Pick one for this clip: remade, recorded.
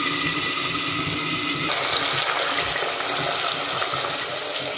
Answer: recorded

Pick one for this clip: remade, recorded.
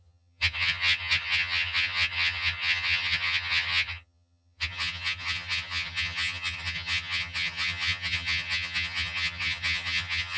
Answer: remade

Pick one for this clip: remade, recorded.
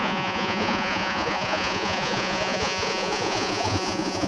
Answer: remade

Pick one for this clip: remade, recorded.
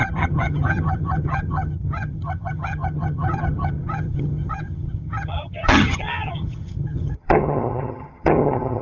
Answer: remade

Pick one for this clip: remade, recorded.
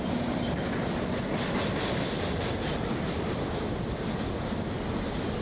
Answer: recorded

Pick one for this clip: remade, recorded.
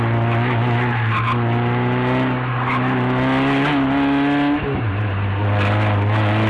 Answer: recorded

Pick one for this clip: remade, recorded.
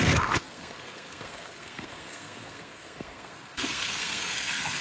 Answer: remade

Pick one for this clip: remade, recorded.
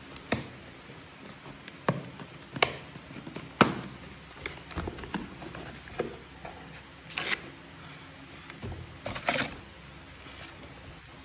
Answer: recorded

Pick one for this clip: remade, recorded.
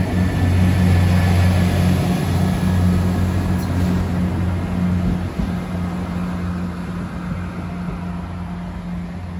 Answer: recorded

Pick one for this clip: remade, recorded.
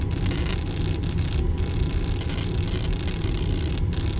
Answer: recorded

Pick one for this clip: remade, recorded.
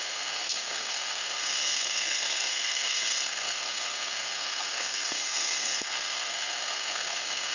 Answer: remade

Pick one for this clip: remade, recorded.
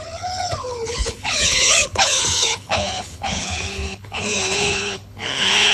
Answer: remade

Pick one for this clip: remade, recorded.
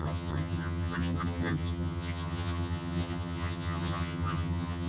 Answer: remade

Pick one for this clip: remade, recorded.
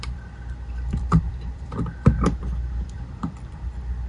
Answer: remade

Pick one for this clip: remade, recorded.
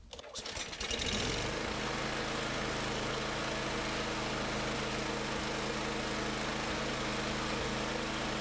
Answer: recorded